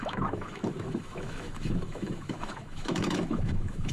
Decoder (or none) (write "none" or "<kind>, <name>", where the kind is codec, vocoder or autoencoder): autoencoder, DAC-VAE